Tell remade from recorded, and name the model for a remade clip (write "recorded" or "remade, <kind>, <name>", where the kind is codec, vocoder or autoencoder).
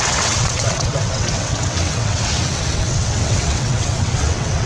remade, vocoder, WaveNeXt